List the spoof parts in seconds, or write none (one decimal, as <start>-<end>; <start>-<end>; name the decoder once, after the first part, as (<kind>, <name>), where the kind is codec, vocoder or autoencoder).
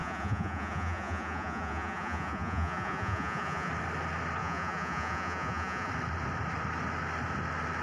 0.0-3.7 (vocoder, Vocos); 4.4-5.9